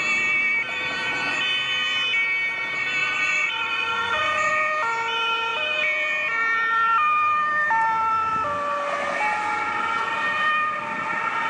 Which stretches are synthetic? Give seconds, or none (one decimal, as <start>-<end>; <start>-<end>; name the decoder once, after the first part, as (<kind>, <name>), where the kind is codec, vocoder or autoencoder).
3.0-4.5 (vocoder, Vocos)